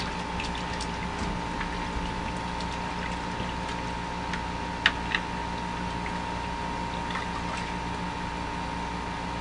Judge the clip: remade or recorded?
recorded